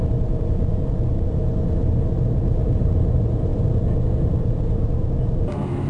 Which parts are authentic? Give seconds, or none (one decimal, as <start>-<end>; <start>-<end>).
3.5-4.3